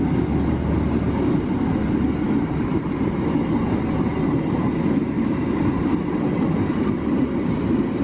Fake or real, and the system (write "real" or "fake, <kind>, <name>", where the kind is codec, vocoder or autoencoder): real